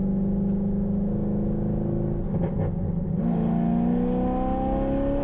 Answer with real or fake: real